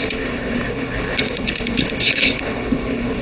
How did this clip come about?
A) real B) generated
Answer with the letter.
B